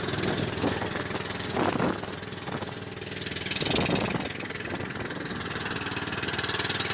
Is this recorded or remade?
recorded